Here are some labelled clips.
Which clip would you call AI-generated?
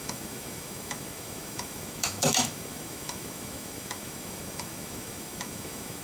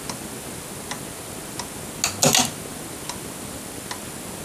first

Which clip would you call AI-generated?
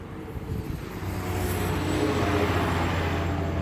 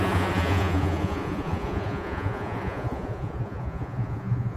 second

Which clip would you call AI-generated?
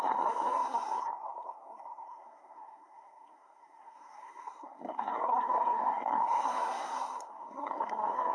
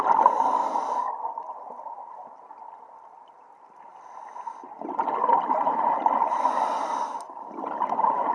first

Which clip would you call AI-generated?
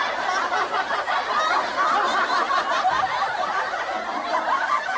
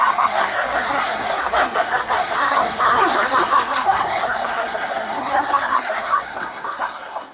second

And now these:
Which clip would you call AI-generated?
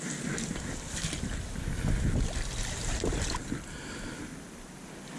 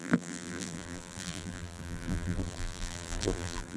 second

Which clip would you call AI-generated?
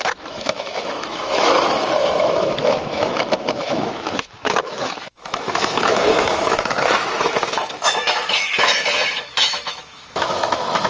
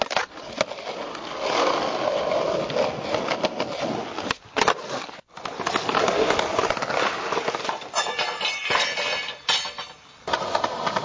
first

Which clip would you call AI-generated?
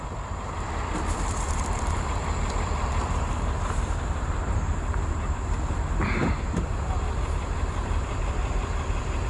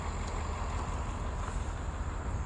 first